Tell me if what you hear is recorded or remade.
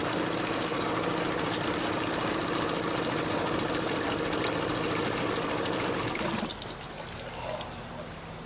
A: recorded